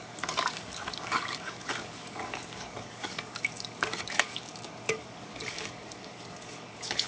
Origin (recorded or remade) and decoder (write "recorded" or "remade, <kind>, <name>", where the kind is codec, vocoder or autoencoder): remade, codec, DAC